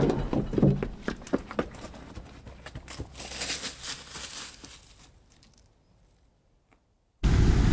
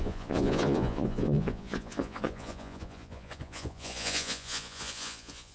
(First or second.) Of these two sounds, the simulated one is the second